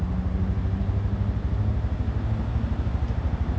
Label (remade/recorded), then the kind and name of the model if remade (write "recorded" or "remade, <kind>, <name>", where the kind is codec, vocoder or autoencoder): recorded